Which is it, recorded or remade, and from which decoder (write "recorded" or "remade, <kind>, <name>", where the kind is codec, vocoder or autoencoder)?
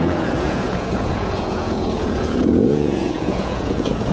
remade, vocoder, Vocos